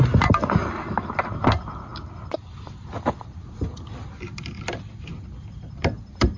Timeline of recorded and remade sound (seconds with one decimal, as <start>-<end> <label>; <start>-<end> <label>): 0.0-6.4 recorded